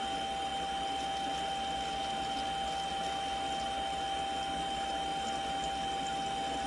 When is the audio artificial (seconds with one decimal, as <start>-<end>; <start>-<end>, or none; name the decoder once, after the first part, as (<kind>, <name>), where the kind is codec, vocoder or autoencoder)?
none